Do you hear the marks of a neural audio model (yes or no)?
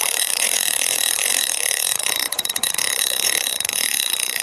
yes